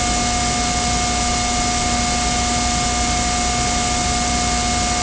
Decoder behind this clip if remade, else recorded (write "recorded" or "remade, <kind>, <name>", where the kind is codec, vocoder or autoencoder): recorded